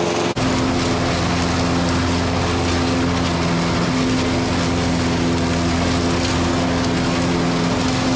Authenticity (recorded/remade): recorded